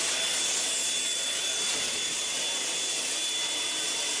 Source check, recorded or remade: recorded